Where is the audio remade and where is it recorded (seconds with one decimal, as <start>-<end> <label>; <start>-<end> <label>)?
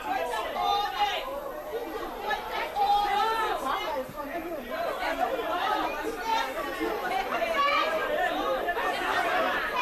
0.0-6.3 remade; 6.3-7.1 recorded; 7.1-9.8 remade